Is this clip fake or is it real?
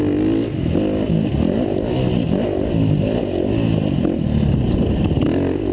real